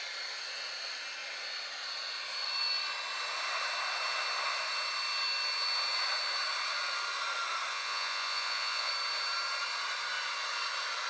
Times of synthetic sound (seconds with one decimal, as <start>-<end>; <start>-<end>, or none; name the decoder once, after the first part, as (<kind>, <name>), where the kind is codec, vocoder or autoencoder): 7.7-8.9 (vocoder, Vocos)